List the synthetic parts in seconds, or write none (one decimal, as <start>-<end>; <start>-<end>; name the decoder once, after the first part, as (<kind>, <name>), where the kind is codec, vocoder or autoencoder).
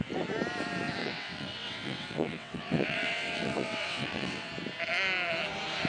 1.0-4.5 (vocoder, WaveNeXt)